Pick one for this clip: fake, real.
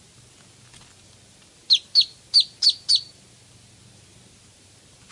real